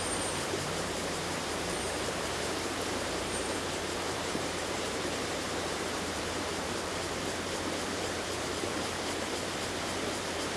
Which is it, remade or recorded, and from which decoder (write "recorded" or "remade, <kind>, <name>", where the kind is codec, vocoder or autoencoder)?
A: remade, vocoder, BigVGAN v2